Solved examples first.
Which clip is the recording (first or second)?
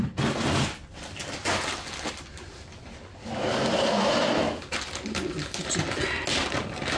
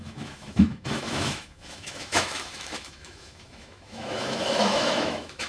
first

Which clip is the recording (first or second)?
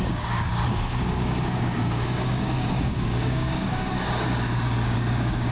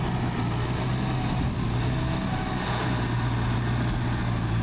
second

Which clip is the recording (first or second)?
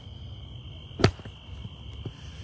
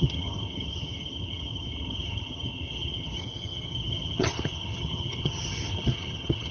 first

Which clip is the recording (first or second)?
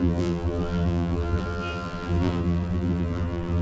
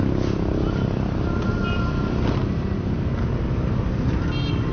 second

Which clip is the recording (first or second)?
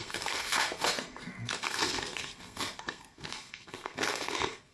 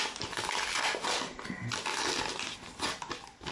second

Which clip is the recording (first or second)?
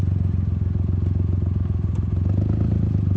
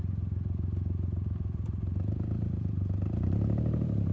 first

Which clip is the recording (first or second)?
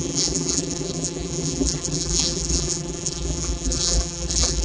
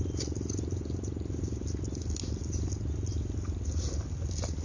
second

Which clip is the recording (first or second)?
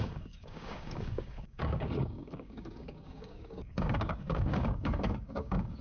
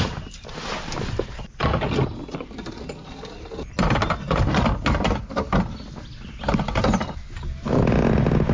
second